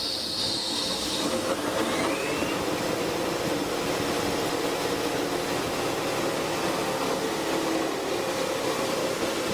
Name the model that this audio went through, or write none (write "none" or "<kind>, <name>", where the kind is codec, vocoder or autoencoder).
none